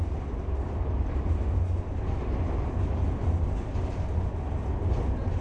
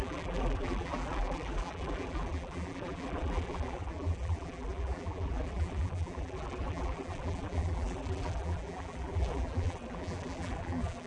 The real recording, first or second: first